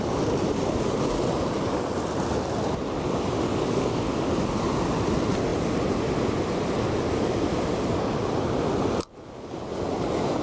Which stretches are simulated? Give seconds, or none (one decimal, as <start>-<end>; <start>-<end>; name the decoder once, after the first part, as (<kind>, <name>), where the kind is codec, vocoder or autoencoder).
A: 3.5-4.3 (codec, DAC)